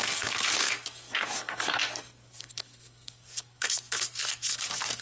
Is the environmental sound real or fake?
fake